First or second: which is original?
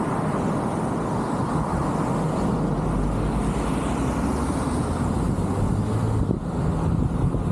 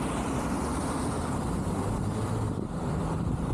first